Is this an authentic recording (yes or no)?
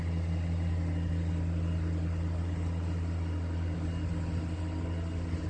yes